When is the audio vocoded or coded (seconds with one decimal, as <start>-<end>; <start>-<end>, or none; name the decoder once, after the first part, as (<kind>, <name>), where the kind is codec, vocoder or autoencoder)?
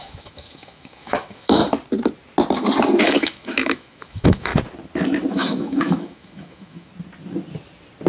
0.0-1.6 (autoencoder, DAC-VAE); 3.0-4.5; 5.3-6.9